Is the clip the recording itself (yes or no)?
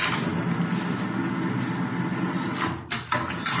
yes